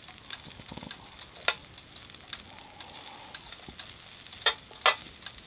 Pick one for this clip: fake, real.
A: real